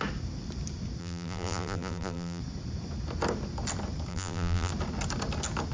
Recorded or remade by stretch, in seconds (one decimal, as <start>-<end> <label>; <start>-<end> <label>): 0.0-1.0 recorded; 1.0-2.4 remade; 2.4-4.1 recorded; 4.1-4.7 remade; 4.7-5.7 recorded